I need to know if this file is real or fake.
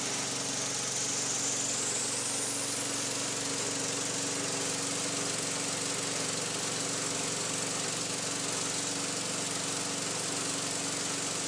real